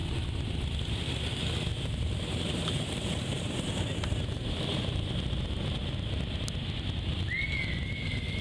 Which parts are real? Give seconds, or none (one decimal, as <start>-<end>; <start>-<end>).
0.0-1.7; 5.5-8.4